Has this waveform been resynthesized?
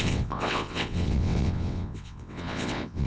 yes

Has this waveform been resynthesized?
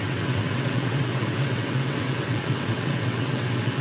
yes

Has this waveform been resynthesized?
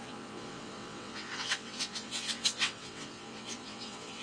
yes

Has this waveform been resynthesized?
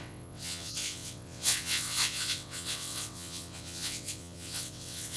yes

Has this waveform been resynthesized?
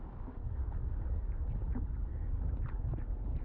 no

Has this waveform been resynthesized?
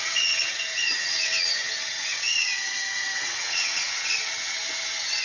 yes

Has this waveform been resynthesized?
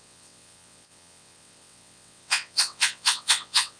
yes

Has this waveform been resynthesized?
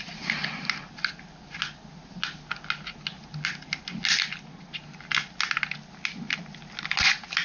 no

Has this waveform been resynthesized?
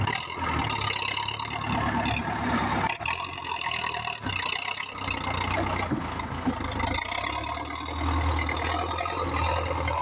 no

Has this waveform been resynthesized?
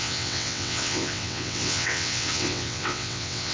yes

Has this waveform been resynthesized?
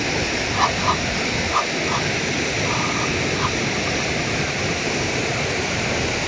no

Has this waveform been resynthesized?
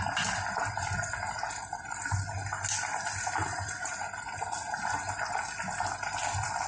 no